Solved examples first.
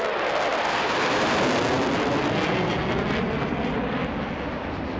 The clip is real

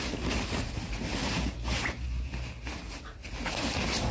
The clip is real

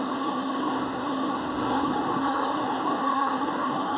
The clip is fake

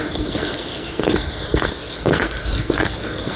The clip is fake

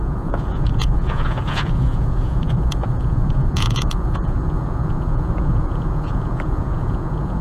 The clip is fake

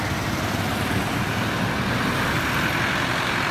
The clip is real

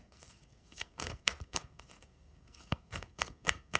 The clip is fake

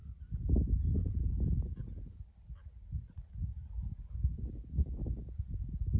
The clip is real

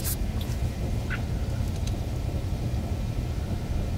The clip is real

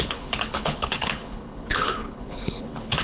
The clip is fake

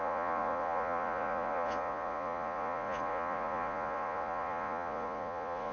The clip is fake